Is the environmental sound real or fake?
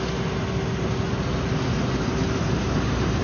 real